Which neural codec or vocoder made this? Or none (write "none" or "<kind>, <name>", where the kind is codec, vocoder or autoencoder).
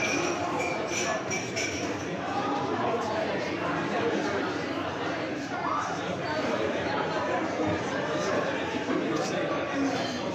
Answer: vocoder, BigVGAN v2